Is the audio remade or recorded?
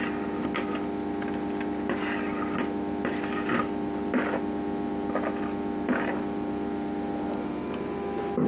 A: recorded